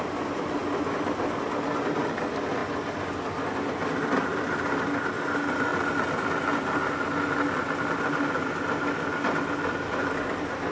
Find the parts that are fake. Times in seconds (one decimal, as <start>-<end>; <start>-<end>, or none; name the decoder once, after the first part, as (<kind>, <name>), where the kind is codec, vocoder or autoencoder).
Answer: none